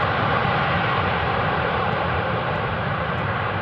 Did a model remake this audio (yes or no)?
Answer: yes